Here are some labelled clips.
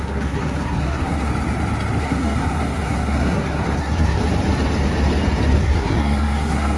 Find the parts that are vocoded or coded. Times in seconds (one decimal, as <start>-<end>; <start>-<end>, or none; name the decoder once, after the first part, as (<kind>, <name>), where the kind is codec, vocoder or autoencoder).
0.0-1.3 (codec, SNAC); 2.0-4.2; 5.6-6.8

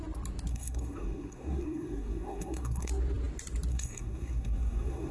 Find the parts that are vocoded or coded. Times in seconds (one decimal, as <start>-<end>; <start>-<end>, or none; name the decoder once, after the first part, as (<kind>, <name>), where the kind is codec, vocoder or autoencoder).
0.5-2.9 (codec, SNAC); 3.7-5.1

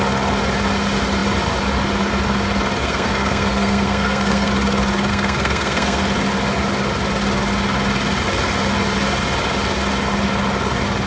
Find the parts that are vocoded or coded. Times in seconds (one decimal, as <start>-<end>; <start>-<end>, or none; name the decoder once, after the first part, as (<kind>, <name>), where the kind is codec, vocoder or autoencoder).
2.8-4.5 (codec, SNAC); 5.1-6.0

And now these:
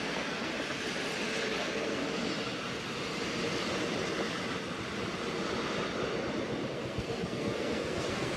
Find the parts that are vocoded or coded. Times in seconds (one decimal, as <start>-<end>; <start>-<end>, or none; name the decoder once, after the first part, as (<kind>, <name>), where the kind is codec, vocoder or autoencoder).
0.0-0.5 (codec, SNAC); 1.6-2.0; 6.7-8.4

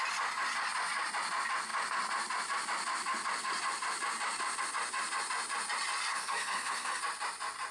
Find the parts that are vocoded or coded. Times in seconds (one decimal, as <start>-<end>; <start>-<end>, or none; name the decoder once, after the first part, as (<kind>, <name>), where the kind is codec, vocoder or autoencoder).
6.1-7.0 (codec, SNAC)

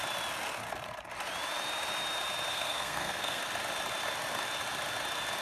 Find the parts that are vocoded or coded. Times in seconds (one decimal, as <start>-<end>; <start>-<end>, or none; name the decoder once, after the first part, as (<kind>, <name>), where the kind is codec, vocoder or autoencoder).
2.5-3.4 (codec, SNAC)

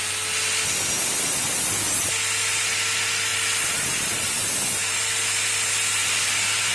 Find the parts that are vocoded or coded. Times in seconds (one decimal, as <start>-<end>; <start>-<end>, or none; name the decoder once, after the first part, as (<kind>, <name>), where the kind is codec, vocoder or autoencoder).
none